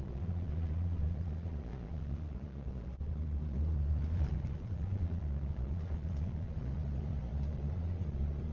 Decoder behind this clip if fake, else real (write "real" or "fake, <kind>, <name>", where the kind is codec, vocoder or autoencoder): fake, vocoder, Vocos